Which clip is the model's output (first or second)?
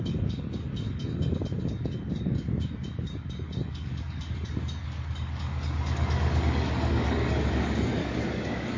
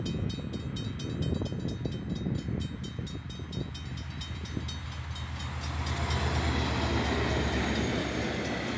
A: first